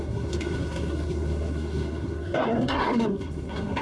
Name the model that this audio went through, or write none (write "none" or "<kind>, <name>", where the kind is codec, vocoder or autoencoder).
codec, SNAC